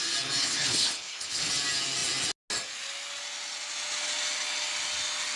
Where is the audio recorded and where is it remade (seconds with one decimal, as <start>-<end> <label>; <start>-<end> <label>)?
0.0-0.4 recorded; 0.4-1.5 remade; 1.5-5.4 recorded

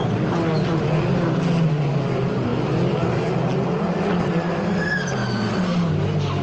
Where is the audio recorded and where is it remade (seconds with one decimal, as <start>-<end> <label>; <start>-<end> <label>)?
0.0-6.4 recorded

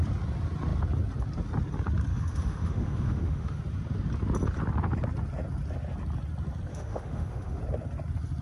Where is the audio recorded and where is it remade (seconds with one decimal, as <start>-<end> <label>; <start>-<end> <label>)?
0.0-2.1 recorded; 2.1-3.6 remade; 3.6-6.7 recorded; 6.7-7.6 remade; 7.6-8.4 recorded

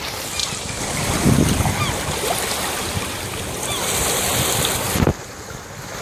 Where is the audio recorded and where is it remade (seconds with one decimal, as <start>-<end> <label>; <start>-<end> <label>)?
0.0-0.4 remade; 0.4-4.0 recorded; 4.0-6.0 remade

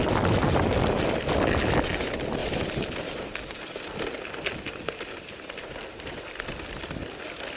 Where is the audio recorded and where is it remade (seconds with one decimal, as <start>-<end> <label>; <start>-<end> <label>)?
0.0-2.4 recorded; 2.4-3.6 remade; 3.6-5.9 recorded; 5.9-7.1 remade; 7.1-7.6 recorded

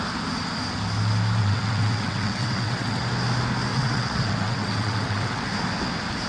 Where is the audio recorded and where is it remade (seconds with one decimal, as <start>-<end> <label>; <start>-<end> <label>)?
0.0-1.4 recorded; 1.4-3.0 remade; 3.0-3.7 recorded; 3.7-5.5 remade; 5.5-6.3 recorded

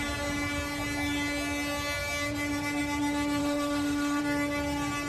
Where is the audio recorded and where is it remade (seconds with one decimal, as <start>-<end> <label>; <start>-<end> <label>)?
0.0-3.4 recorded; 3.4-4.2 remade; 4.2-5.1 recorded